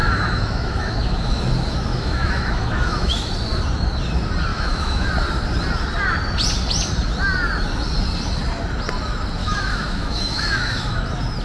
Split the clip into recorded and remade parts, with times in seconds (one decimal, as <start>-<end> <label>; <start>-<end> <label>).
0.0-1.4 remade; 1.4-1.9 recorded; 1.9-3.3 remade; 3.3-4.5 recorded; 4.5-5.1 remade; 5.1-9.4 recorded; 9.4-11.0 remade; 11.0-11.4 recorded